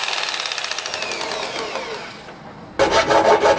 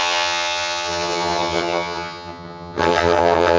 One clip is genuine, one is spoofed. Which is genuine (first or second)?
first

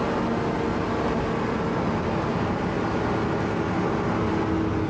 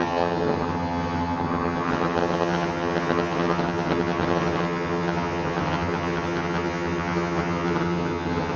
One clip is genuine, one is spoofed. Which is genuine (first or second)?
first